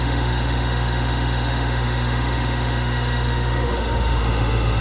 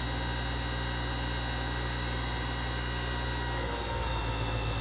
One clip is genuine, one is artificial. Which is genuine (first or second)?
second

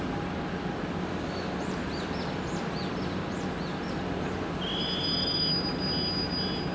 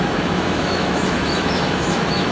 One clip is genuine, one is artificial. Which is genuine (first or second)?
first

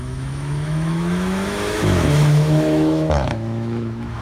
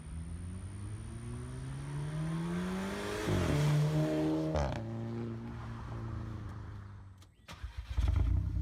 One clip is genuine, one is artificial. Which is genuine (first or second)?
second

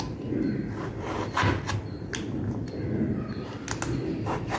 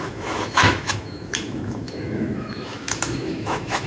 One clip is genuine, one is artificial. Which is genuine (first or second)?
first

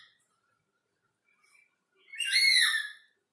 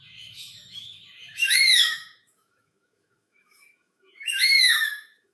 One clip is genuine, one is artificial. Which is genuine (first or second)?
first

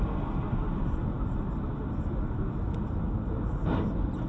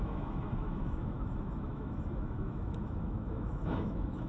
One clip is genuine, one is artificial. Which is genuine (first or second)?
first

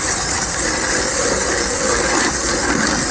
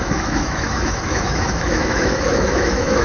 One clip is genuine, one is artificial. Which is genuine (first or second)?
first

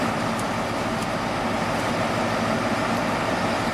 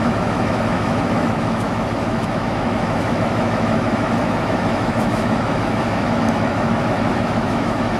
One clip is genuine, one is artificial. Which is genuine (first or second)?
first